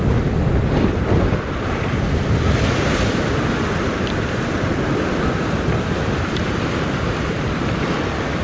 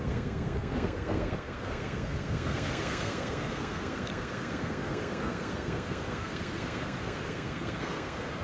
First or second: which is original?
first